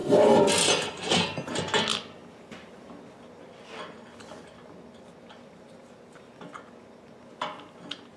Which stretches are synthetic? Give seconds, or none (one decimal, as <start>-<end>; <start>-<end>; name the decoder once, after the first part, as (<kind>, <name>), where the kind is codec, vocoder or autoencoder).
0.0-0.9 (vocoder, BigVGAN v2); 1.9-2.8